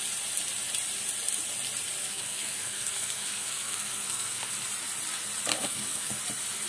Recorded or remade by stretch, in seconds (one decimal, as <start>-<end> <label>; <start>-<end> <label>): 0.0-2.0 recorded; 2.0-4.5 remade; 4.5-5.5 recorded; 5.5-6.2 remade; 6.2-6.7 recorded